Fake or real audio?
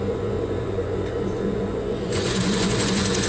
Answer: fake